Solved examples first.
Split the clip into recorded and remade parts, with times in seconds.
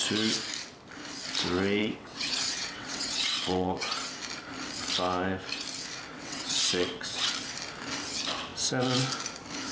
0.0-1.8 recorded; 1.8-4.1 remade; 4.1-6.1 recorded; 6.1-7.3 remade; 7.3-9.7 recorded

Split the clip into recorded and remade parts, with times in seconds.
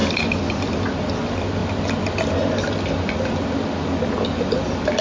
0.0-5.0 recorded